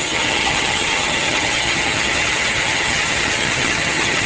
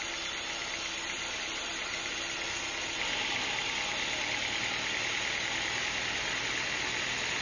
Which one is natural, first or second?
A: second